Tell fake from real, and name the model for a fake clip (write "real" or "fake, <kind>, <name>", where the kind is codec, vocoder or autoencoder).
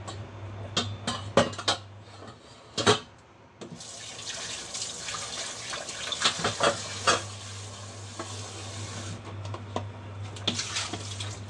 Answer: real